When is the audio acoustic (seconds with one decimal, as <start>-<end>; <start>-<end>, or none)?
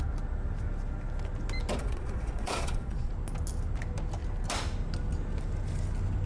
0.0-1.8; 3.1-6.3